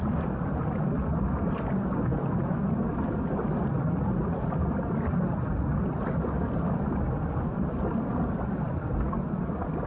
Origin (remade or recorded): recorded